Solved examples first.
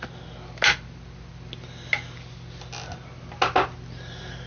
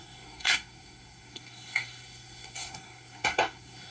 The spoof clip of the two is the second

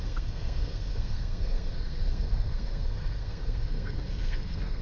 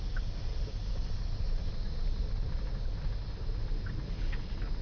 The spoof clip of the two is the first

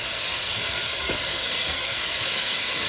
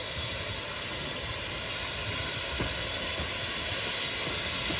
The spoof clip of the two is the first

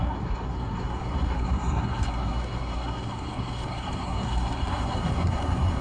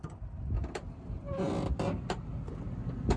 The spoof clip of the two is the first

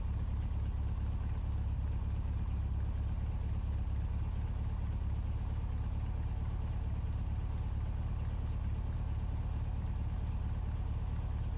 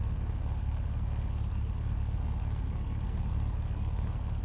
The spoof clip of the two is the second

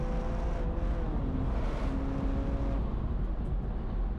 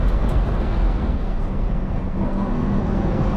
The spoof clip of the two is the second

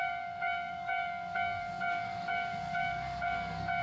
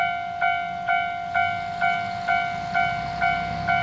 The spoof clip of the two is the first